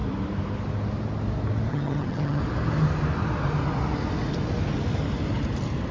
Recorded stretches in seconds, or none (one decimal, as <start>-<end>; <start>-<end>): 0.0-1.7; 2.4-5.9